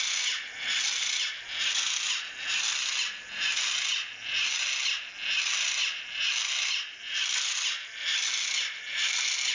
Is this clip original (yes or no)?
yes